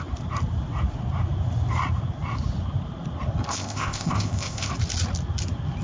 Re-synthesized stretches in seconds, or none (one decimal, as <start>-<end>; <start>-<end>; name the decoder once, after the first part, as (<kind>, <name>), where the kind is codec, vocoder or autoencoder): 3.5-4.7 (codec, ZipCodec)